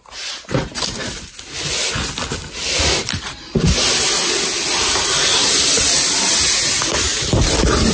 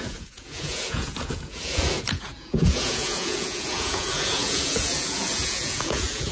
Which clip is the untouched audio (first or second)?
first